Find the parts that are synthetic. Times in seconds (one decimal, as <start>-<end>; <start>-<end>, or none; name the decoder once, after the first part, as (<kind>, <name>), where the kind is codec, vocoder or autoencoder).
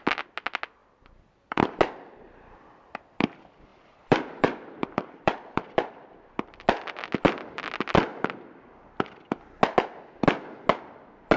0.8-1.6 (vocoder, BigVGAN v2); 3.7-6.3